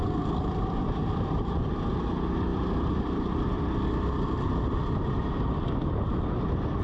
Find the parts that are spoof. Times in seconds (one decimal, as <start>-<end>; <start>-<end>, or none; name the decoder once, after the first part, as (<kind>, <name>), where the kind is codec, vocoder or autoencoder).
0.8-1.4 (vocoder, BigVGAN v2); 2.5-3.8